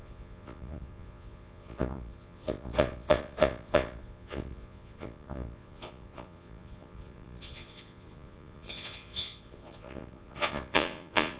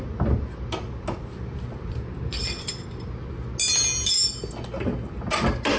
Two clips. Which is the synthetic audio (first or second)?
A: first